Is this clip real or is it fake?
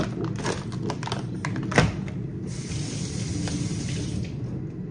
real